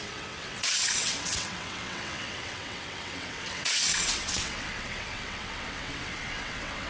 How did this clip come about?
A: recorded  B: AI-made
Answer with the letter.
B